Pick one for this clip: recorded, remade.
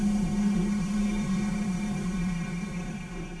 remade